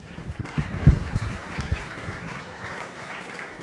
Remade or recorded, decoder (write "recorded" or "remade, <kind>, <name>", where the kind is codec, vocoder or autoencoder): remade, codec, SNAC